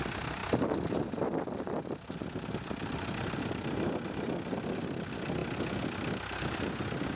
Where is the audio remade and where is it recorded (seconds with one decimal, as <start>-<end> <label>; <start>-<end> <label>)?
0.0-7.2 recorded